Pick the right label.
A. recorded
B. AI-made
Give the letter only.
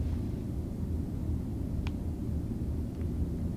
A